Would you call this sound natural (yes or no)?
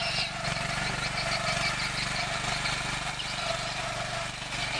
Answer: yes